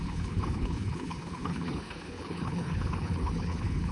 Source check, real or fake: fake